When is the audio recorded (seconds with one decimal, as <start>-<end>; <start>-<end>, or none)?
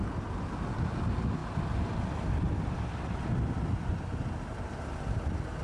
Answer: 0.0-5.6